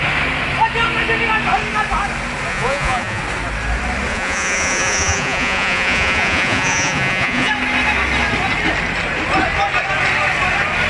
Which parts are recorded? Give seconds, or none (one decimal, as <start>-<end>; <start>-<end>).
0.0-2.5; 3.2-4.1; 7.5-10.9

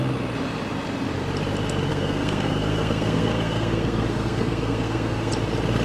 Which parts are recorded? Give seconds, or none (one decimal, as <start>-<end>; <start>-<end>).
0.0-1.9; 5.3-5.8

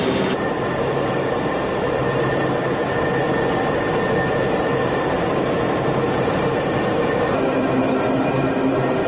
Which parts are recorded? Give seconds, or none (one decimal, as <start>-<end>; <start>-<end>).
2.0-4.6

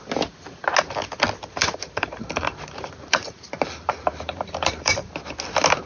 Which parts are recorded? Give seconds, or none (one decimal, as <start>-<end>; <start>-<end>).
0.0-1.6; 5.1-5.9

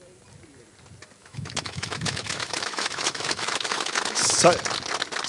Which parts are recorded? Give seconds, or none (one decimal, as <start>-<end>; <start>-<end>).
0.0-1.2; 4.4-5.3

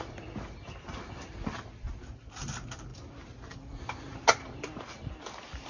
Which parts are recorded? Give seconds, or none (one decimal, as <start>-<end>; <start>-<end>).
0.0-5.7

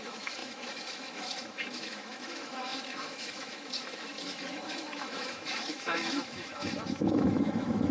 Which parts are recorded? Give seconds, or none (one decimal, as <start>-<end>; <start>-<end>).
none